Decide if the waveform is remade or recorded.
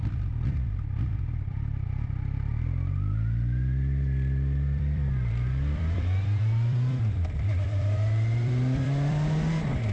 remade